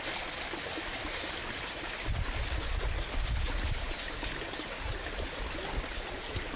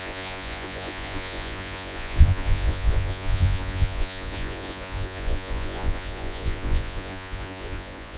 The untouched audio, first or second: first